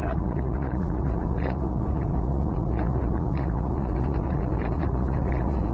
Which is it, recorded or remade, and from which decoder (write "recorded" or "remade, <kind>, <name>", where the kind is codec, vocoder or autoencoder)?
remade, vocoder, Vocos